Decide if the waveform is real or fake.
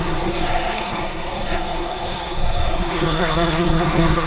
fake